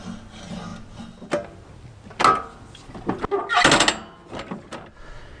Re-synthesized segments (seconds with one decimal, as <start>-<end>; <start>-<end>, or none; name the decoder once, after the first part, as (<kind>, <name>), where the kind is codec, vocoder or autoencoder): none